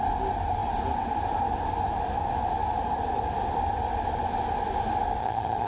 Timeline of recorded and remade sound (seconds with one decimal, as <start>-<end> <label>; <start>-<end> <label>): 0.0-5.2 recorded; 5.2-5.7 remade